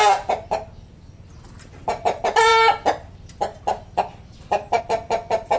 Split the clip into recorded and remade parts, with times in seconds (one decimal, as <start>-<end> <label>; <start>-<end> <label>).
0.0-5.6 recorded